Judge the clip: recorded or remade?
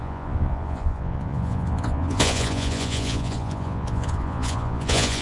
remade